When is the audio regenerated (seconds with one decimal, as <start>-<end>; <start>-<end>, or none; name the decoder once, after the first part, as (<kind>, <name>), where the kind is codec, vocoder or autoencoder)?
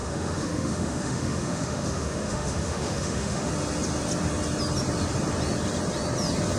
0.0-3.5 (autoencoder, DAC-VAE)